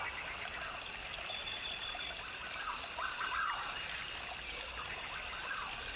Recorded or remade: recorded